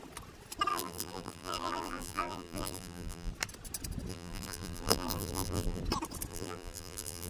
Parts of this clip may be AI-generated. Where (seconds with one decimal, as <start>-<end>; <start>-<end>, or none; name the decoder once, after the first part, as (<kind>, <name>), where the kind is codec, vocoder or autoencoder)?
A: 0.7-3.3 (vocoder, BigVGAN v2); 4.1-5.8; 6.3-7.3